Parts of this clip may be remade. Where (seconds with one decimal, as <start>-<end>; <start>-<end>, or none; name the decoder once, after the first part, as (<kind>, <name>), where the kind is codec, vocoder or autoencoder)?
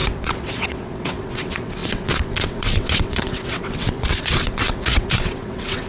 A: 0.0-5.9 (vocoder, WaveNeXt)